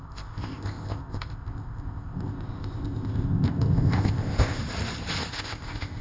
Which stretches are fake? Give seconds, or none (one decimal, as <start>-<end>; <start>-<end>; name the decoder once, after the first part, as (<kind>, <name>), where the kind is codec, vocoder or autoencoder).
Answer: 0.0-4.6 (codec, ZipCodec); 5.3-6.0